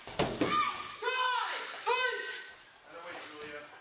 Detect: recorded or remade recorded